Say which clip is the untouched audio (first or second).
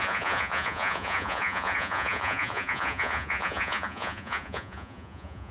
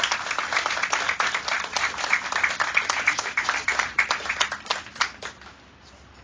second